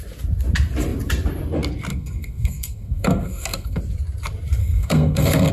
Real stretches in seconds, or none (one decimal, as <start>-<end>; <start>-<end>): 0.0-1.9; 3.8-4.6